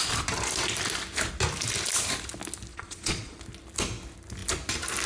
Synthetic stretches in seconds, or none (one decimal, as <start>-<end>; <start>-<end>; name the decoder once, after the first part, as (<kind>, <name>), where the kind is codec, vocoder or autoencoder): 2.7-3.4 (vocoder, Vocos)